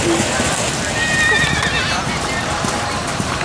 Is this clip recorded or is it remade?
recorded